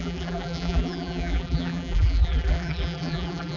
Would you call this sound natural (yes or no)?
no